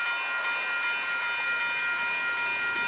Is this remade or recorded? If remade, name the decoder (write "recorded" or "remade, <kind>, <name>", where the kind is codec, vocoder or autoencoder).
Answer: recorded